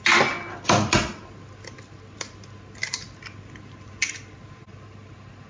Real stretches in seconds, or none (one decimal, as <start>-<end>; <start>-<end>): 0.0-5.5